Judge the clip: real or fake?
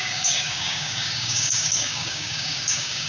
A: fake